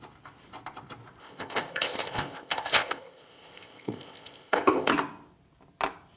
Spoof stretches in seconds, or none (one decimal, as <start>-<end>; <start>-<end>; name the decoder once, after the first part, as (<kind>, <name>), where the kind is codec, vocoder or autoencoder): 1.2-4.9 (codec, ZipCodec)

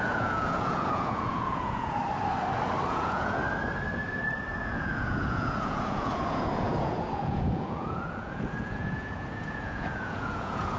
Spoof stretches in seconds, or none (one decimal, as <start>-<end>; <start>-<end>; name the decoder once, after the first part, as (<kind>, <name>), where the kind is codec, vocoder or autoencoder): 0.0-2.0 (vocoder, Vocos); 2.9-3.4; 4.6-10.8

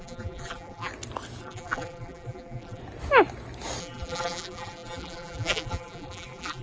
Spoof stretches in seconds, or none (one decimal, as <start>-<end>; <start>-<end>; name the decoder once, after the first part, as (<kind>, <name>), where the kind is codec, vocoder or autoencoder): 0.0-0.9 (vocoder, BigVGAN v2); 1.4-2.8; 3.8-6.6

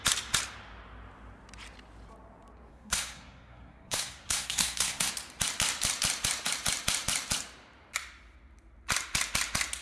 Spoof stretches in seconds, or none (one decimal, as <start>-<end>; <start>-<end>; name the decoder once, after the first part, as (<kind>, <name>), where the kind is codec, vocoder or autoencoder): 2.7-5.1 (codec, SNAC)

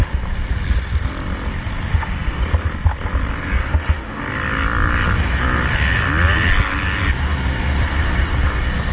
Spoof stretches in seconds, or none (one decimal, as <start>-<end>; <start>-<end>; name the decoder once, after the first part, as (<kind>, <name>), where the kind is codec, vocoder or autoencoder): 1.9-2.4 (autoencoder, DAC-VAE); 3.6-4.2

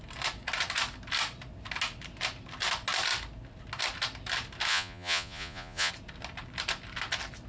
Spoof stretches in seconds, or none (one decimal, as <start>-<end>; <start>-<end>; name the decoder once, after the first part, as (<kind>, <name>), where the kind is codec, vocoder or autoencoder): 4.7-5.9 (vocoder, Vocos)

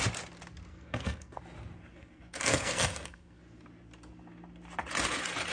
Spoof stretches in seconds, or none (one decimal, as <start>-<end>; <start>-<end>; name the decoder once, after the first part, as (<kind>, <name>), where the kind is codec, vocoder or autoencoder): 0.7-1.4 (codec, SNAC); 1.9-3.4

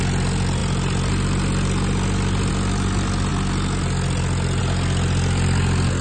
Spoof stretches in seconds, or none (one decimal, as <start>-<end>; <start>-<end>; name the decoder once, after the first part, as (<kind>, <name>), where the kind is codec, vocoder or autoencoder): none